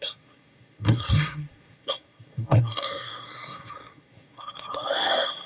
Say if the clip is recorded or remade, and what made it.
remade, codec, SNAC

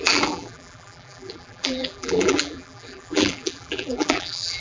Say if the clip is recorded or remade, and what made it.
remade, vocoder, BigVGAN v2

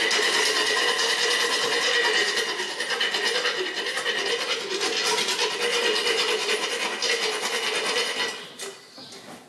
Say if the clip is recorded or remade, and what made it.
recorded